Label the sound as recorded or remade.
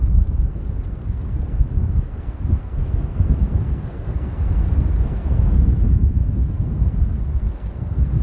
remade